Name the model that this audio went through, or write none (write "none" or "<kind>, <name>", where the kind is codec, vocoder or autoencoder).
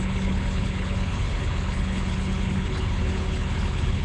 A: codec, HILCodec